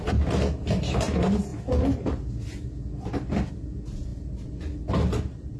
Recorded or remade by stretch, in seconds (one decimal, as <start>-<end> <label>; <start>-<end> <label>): 0.0-5.6 recorded